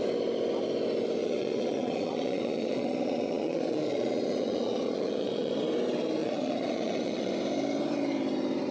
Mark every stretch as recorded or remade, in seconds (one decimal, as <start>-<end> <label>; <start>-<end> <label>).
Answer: 0.0-1.2 recorded; 1.2-5.5 remade; 5.5-6.2 recorded; 6.2-7.3 remade; 7.3-8.7 recorded